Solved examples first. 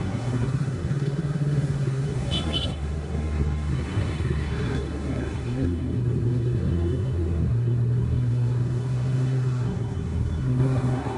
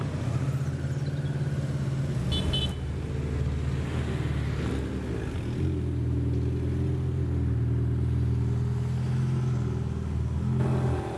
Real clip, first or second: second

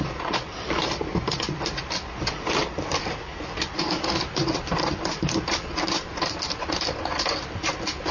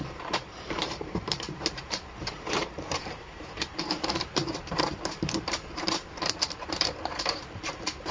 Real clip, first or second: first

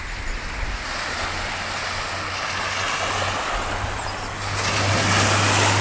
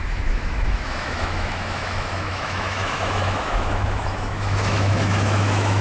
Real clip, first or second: first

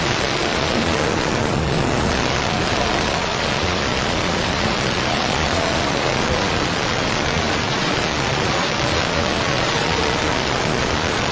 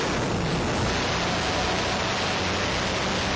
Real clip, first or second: second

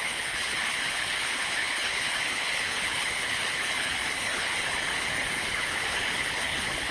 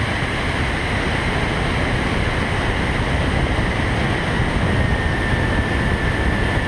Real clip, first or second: second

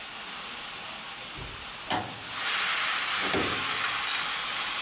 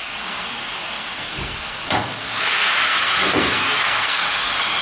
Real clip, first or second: first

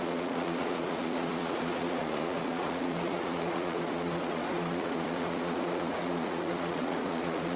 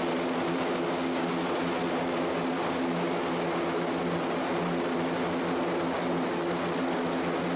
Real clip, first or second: second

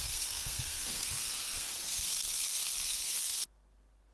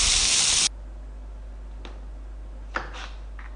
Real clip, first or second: second